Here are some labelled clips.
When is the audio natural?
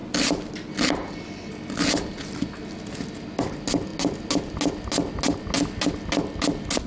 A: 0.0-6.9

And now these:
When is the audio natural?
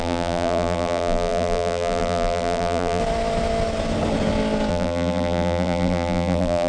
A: 3.0-4.7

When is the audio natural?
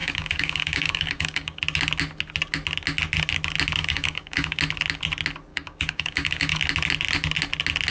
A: 1.6-3.8; 4.6-5.5; 6.6-7.9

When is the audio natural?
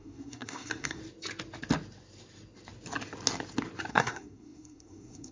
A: 1.0-3.9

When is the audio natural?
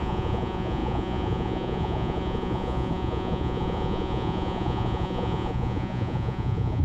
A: none